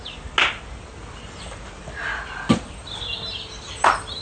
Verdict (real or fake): real